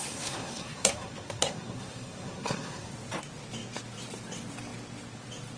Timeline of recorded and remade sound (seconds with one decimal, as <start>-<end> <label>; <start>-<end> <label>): 0.0-2.9 remade; 2.9-5.6 recorded